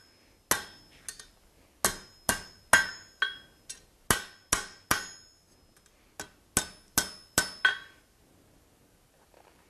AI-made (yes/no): no